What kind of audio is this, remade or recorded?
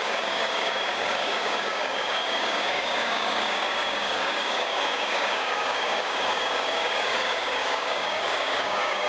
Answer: remade